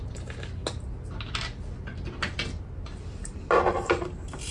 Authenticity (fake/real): real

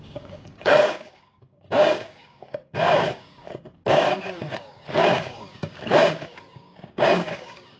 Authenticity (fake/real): fake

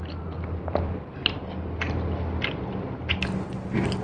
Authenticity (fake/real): real